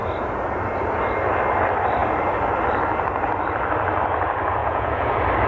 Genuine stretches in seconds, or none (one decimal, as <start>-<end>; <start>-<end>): 0.0-4.6; 5.1-5.5